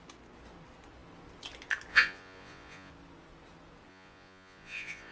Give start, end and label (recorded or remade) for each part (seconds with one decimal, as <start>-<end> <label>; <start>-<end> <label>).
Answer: 0.0-1.9 recorded; 1.9-2.9 remade; 2.9-3.9 recorded; 3.9-5.1 remade